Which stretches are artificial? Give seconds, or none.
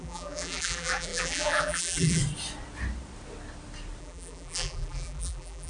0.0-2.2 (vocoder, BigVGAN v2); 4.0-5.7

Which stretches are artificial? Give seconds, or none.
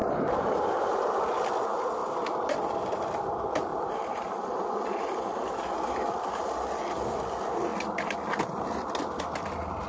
2.0-3.1 (vocoder, BigVGAN v2); 3.7-6.8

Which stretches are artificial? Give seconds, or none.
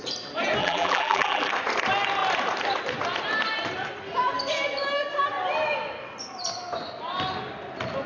0.6-1.5 (vocoder, BigVGAN v2)